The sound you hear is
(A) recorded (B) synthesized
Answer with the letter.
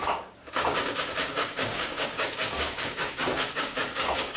B